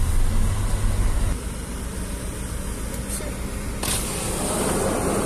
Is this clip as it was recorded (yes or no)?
yes